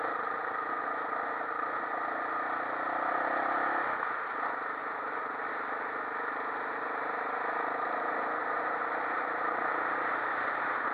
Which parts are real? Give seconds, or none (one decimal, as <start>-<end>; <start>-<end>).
0.0-4.8; 5.5-8.4; 9.0-10.9